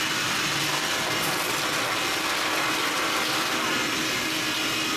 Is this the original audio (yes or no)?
yes